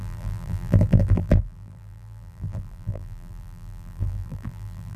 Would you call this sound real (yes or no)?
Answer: no